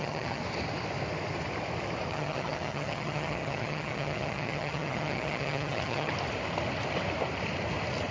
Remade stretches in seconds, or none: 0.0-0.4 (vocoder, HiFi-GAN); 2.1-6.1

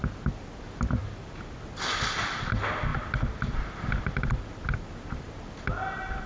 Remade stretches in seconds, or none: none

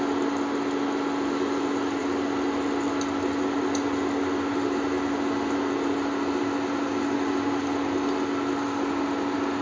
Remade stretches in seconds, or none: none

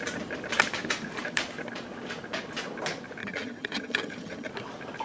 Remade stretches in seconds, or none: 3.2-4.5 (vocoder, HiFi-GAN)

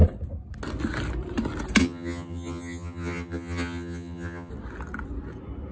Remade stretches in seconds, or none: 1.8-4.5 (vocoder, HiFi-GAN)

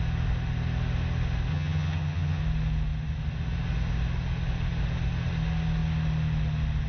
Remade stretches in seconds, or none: 1.5-2.4 (vocoder, HiFi-GAN)

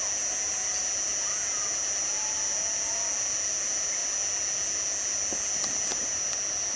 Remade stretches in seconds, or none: none

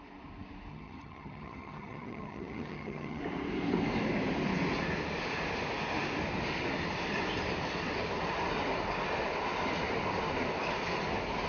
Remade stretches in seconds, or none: 0.7-3.2 (vocoder, HiFi-GAN)